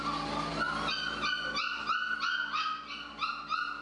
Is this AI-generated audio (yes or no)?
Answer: no